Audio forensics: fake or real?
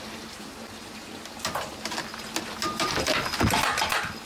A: real